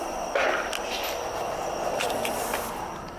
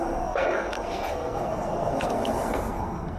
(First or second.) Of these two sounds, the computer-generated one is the second